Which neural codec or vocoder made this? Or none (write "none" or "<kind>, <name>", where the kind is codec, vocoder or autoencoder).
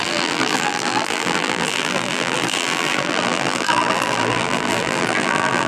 vocoder, BigVGAN v2